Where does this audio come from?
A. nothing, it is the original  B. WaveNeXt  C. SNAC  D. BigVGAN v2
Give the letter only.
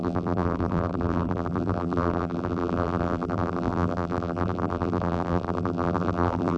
D